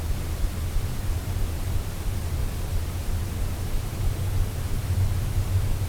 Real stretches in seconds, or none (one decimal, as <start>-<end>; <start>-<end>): 0.0-5.9